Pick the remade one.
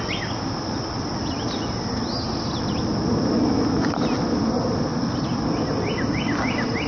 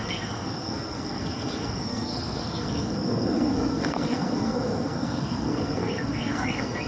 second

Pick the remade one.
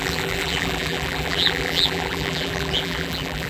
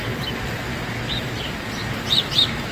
first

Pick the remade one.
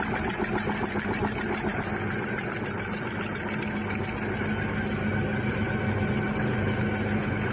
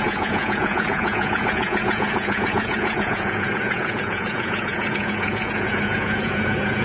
second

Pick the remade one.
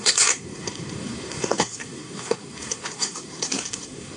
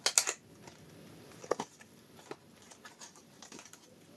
first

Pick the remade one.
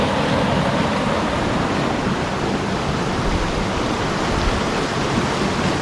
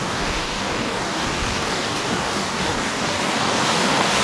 second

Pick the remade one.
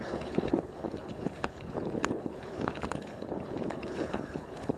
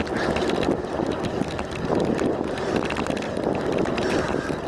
first